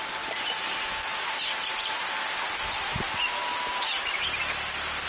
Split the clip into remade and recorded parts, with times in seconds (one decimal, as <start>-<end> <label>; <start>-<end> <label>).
0.0-5.1 recorded

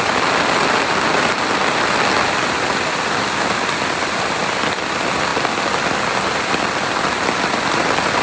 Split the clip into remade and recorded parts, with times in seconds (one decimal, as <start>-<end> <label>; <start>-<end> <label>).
0.0-5.3 remade; 5.3-6.1 recorded; 6.1-8.2 remade

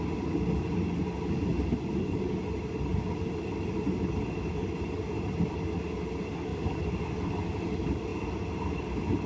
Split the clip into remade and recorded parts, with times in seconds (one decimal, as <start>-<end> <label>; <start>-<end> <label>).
0.0-4.6 recorded; 4.6-5.6 remade; 5.6-6.5 recorded; 6.5-7.0 remade; 7.0-8.1 recorded; 8.1-8.6 remade; 8.6-9.3 recorded

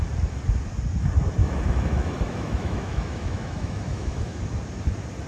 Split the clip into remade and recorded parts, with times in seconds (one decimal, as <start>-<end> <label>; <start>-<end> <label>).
0.0-1.4 recorded; 1.4-4.4 remade; 4.4-5.3 recorded

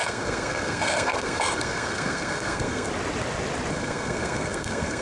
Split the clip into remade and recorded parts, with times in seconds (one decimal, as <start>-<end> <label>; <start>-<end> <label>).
0.0-2.9 remade; 2.9-3.7 recorded; 3.7-5.0 remade

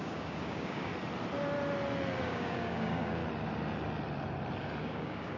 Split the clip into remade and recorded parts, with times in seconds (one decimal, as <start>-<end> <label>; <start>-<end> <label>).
0.0-0.9 remade; 0.9-2.2 recorded; 2.2-3.2 remade; 3.2-4.8 recorded; 4.8-5.4 remade